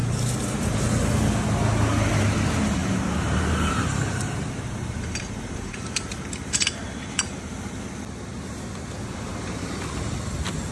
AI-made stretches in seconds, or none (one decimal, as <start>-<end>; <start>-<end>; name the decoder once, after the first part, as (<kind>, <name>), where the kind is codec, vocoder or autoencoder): 0.0-0.8 (vocoder, BigVGAN v2); 2.8-7.8; 8.3-9.7